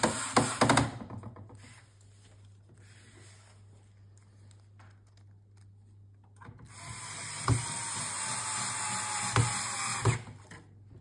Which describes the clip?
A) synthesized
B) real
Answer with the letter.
B